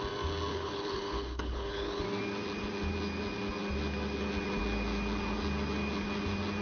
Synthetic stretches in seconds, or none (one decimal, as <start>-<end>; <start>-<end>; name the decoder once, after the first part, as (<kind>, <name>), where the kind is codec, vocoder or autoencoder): 0.5-2.0 (codec, HILCodec)